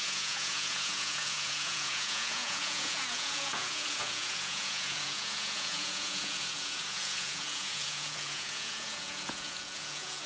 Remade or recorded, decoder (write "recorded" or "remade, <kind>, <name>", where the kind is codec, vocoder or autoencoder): remade, vocoder, Vocos